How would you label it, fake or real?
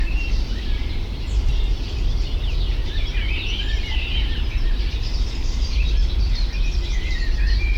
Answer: fake